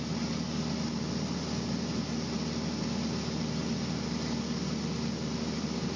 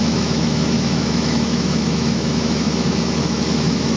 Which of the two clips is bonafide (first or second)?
first